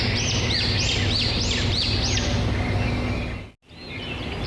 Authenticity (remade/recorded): recorded